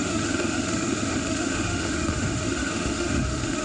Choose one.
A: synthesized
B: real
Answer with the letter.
A